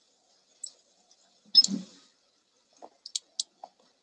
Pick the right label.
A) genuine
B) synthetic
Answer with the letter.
A